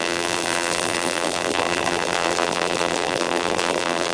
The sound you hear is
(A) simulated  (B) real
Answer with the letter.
A